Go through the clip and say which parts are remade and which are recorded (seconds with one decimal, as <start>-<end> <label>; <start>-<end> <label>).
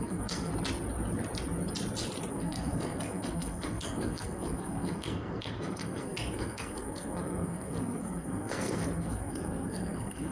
0.0-0.5 remade; 0.5-2.3 recorded; 2.3-10.3 remade